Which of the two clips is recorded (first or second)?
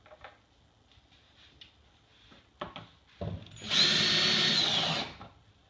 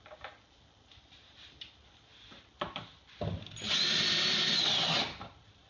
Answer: first